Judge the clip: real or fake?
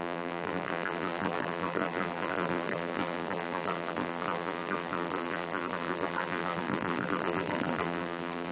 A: fake